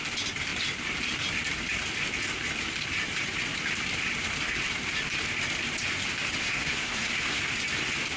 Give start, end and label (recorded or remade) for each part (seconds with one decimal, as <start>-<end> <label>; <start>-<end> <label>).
0.0-6.4 recorded; 6.4-7.4 remade; 7.4-8.2 recorded